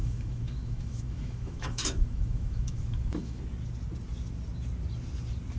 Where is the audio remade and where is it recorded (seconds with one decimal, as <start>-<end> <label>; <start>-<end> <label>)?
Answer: 0.0-3.4 remade; 3.4-5.6 recorded